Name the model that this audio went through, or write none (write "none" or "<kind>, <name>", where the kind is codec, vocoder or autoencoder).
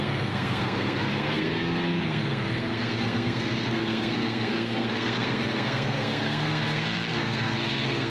codec, SNAC